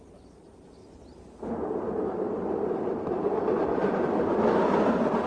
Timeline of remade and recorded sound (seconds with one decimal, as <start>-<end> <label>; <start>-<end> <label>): 0.0-0.8 recorded; 0.8-4.0 remade; 4.0-5.3 recorded